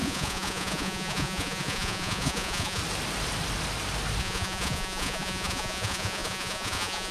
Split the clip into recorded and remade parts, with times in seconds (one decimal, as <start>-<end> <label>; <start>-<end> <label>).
0.0-2.8 remade; 2.8-4.2 recorded; 4.2-7.1 remade

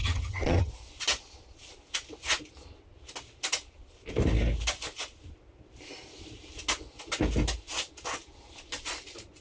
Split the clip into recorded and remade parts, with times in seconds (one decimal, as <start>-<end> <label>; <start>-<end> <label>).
0.0-0.7 remade; 0.7-9.4 recorded

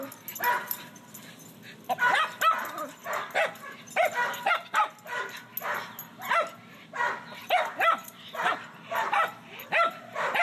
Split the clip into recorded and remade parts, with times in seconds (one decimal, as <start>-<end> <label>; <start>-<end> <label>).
0.0-7.4 recorded; 7.4-10.4 remade

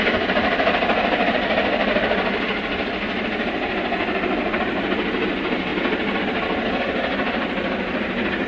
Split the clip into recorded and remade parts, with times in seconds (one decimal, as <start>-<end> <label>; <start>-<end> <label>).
0.0-8.5 recorded

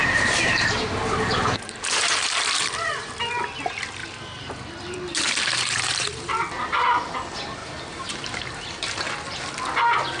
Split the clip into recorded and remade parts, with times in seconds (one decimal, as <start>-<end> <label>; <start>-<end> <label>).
0.0-3.3 remade; 3.3-4.0 recorded; 4.0-6.4 remade; 6.4-7.6 recorded; 7.6-8.4 remade; 8.4-10.2 recorded